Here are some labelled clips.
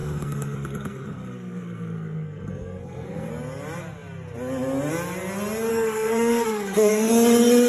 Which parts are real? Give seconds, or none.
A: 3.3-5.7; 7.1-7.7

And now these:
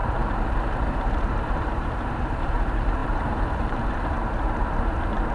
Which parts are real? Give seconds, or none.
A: none

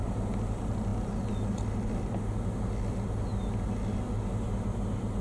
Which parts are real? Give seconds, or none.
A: 0.0-5.2